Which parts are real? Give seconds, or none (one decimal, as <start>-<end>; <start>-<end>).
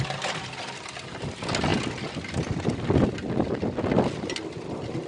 0.0-5.1